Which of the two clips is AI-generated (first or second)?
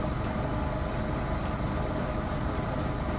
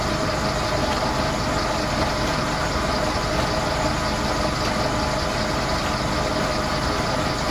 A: first